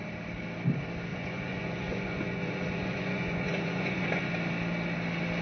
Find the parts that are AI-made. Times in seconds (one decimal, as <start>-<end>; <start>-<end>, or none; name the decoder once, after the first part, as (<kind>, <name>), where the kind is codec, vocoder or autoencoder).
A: 1.1-4.3 (vocoder, Vocos)